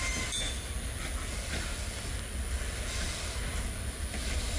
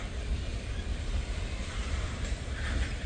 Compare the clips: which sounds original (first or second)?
first